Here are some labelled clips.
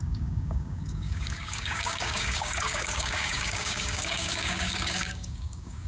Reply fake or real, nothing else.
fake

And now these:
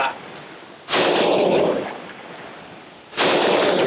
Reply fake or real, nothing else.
real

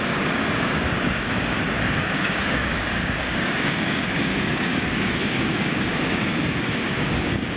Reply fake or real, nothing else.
fake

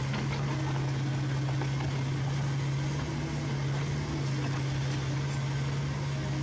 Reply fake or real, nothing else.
real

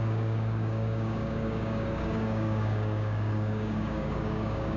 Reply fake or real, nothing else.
fake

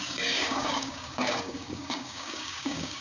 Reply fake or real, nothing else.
fake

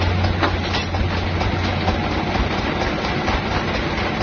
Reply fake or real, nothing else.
real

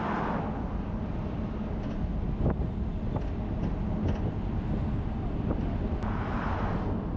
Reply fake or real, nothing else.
real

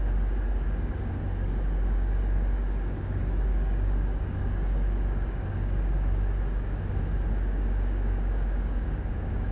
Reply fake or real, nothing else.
fake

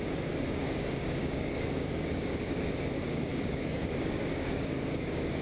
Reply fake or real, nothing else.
fake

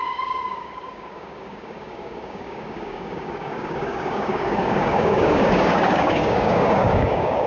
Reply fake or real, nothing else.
fake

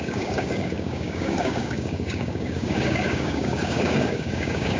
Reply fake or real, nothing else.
fake